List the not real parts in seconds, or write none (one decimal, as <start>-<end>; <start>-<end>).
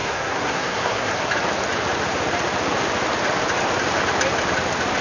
0.0-1.2